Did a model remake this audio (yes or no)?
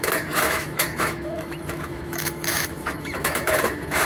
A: yes